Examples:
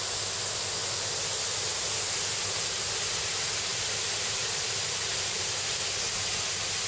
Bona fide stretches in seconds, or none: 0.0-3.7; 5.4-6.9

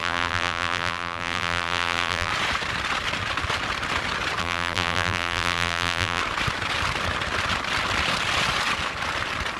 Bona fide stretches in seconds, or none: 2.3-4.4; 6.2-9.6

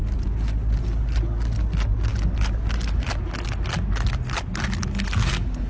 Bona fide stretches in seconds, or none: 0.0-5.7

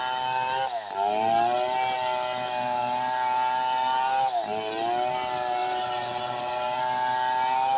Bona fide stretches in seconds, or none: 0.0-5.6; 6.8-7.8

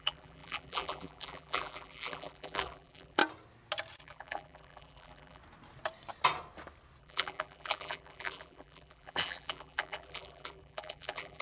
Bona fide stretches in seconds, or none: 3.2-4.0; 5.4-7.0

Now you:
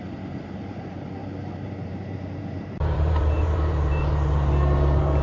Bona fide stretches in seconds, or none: 0.0-1.2; 4.3-5.2

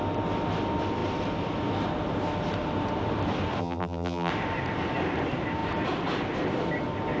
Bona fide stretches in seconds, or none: 0.0-3.6; 4.3-7.2

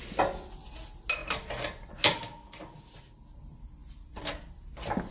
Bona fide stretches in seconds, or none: 0.0-1.2; 1.9-3.8; 4.5-5.1